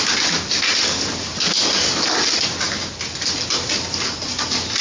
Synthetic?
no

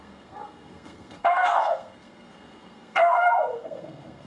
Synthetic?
yes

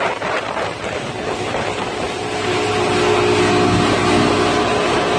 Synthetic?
no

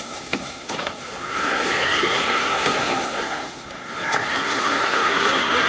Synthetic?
yes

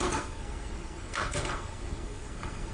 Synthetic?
yes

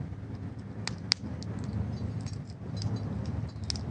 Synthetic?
no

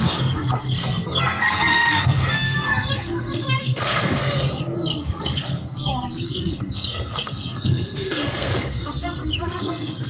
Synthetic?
yes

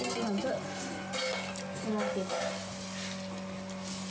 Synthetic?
no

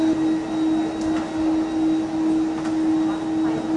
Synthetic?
no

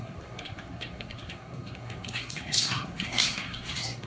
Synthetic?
yes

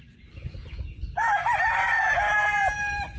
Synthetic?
no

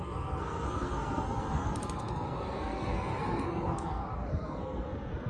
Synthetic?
yes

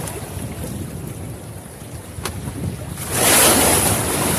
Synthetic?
no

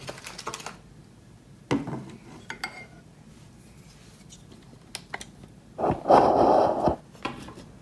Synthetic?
no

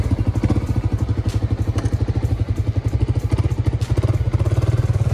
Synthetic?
no